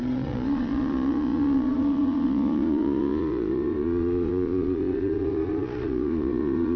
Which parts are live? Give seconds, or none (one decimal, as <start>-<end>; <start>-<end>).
none